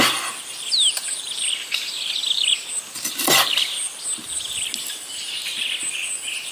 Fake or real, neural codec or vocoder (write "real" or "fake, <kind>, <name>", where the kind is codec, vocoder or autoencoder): real